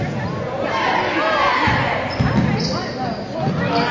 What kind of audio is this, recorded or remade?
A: recorded